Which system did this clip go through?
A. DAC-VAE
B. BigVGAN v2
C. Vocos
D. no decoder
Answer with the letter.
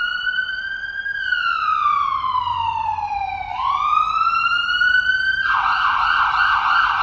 B